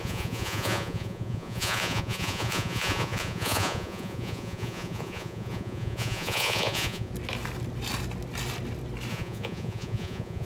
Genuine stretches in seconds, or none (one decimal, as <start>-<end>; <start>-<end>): 7.1-9.1